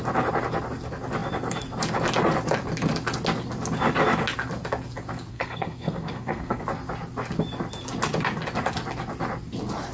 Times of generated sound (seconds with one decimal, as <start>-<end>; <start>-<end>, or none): 5.3-6.6